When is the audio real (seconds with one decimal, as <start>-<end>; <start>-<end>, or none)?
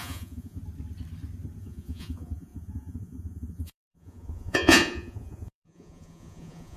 0.6-1.6